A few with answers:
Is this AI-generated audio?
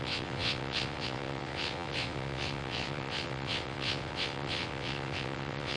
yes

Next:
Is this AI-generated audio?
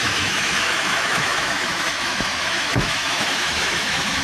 yes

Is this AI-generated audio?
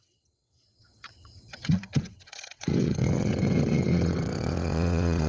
yes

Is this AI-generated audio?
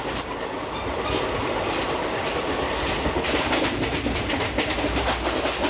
no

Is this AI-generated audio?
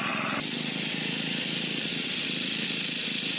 no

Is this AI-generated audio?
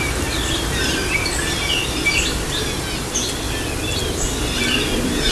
no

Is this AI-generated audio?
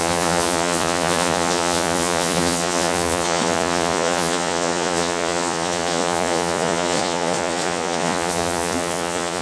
yes